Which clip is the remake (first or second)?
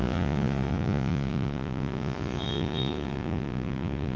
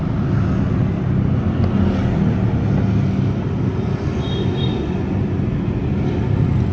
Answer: first